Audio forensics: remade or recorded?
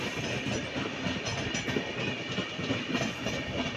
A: recorded